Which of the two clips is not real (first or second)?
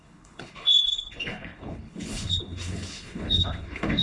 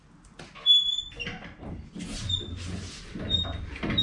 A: first